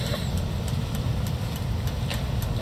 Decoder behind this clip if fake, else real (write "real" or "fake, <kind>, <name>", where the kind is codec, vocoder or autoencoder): real